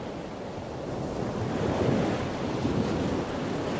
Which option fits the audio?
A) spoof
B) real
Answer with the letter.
B